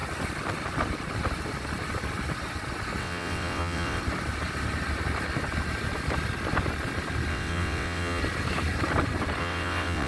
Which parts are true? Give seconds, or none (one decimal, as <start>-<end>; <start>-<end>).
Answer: 0.0-3.0; 4.0-7.3; 8.2-9.4